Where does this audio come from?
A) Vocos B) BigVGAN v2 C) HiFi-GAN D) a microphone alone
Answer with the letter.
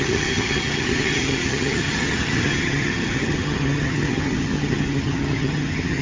C